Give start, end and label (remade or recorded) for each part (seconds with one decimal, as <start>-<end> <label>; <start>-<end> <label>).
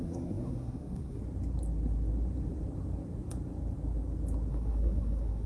0.0-1.2 remade; 1.2-4.5 recorded; 4.5-5.5 remade